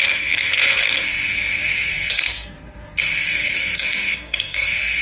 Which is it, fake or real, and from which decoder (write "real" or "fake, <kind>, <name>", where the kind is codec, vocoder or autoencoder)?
fake, codec, SNAC